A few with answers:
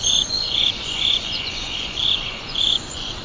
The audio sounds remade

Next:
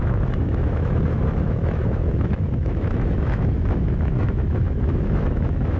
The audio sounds remade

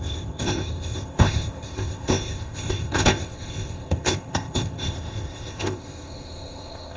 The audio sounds remade